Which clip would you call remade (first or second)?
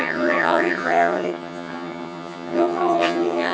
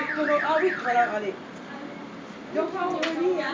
first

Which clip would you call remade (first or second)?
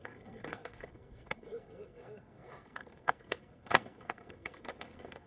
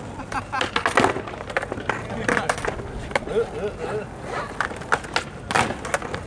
first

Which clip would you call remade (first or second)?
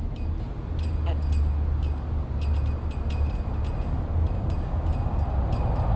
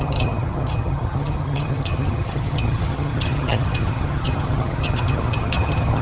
second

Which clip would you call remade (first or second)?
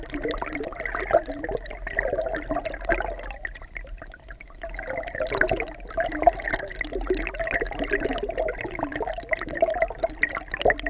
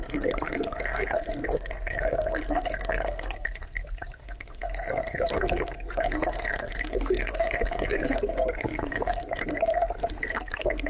second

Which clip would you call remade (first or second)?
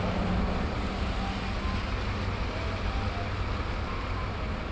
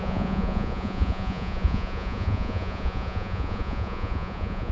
second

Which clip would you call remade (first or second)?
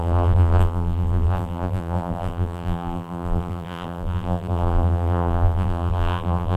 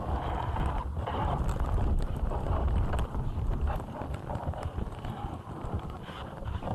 first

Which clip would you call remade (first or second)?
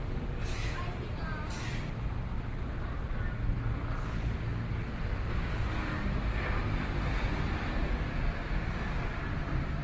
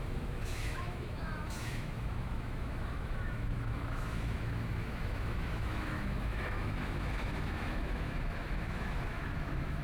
second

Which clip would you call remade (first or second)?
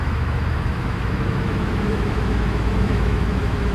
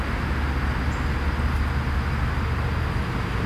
first